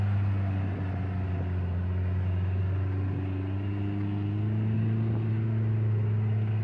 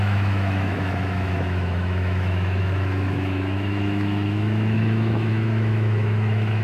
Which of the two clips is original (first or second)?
first